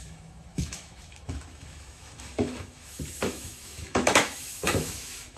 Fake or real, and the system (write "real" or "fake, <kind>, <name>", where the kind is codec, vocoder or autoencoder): fake, autoencoder, DAC-VAE